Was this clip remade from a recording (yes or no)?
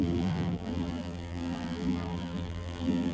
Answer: yes